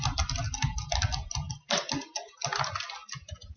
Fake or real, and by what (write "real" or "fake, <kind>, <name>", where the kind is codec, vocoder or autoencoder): real